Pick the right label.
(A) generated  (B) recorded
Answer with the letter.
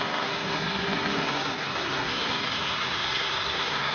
A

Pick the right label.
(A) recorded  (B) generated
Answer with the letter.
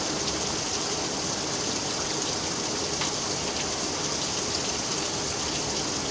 A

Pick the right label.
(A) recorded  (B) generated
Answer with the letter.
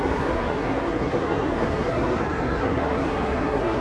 B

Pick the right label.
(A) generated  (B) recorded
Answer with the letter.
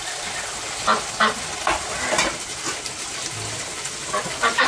B